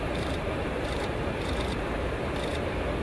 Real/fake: fake